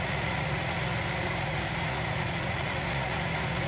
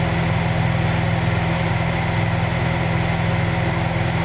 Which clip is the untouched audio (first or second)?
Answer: second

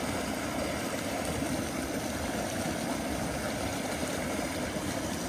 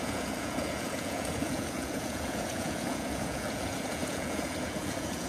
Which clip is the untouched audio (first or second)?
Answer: first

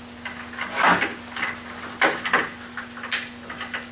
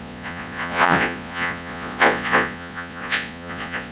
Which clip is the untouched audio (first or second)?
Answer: first